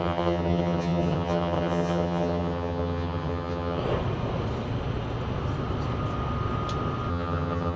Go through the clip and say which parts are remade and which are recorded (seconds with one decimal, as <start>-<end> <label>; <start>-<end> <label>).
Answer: 0.0-3.8 remade; 3.8-7.1 recorded; 7.1-7.8 remade